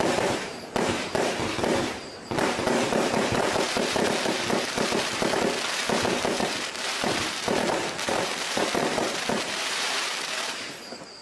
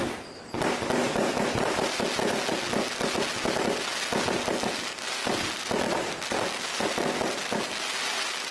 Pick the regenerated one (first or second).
first